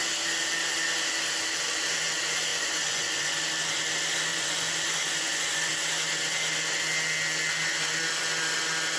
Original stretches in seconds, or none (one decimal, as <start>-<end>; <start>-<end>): 0.0-2.5; 3.4-4.3; 5.7-9.0